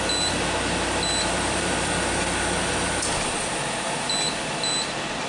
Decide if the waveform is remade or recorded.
recorded